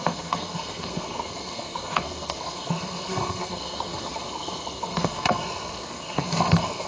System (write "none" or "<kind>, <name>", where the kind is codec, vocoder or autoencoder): codec, SNAC